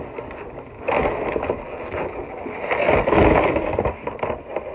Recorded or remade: recorded